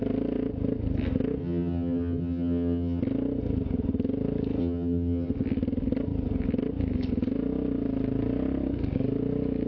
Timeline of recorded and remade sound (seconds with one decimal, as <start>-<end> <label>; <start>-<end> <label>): 0.0-1.4 recorded; 1.4-3.0 remade; 3.0-4.6 recorded; 4.6-5.3 remade; 5.3-9.7 recorded